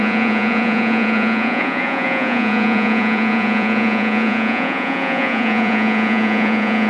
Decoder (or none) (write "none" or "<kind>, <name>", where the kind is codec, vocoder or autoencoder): vocoder, Vocos